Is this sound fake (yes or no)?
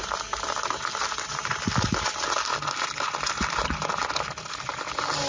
no